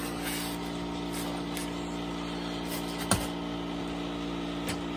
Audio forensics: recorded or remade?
recorded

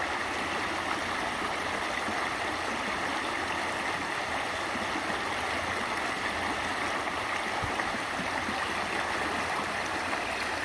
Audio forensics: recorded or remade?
recorded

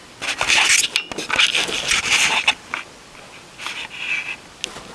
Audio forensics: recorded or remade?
recorded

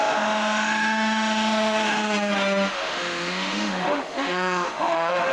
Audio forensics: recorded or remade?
remade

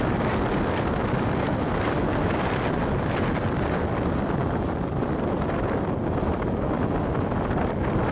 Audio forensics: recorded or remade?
recorded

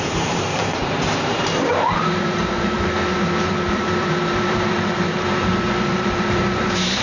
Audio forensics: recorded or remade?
remade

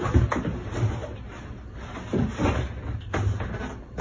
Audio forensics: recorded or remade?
recorded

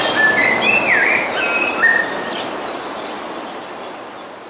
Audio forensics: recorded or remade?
recorded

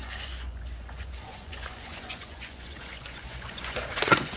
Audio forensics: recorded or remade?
remade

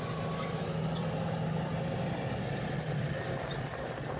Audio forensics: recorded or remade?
recorded